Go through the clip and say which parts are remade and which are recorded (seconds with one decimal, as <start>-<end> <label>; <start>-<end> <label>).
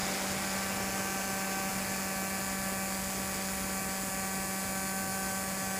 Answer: 0.0-5.8 recorded